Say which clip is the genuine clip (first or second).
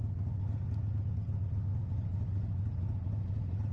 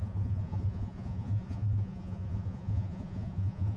first